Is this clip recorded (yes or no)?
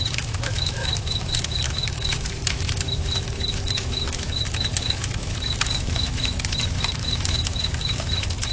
no